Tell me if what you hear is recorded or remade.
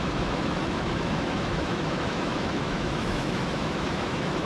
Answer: remade